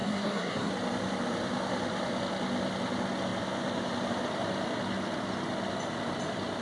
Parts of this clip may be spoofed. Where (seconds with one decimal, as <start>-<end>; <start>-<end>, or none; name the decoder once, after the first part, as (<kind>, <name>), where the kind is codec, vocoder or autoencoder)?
0.0-0.7 (codec, SNAC)